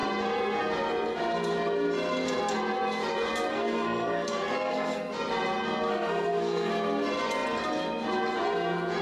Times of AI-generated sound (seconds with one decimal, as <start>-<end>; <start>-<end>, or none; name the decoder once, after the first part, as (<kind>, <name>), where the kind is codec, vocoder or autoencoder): 3.5-5.1 (codec, SNAC); 5.9-6.7